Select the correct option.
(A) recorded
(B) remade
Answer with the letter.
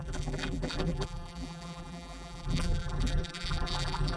B